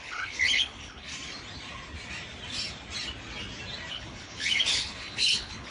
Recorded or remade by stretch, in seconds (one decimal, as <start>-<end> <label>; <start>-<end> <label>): 0.0-1.1 remade; 1.1-3.9 recorded; 3.9-5.7 remade